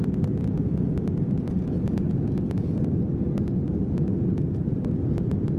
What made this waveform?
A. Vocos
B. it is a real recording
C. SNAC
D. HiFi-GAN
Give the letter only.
B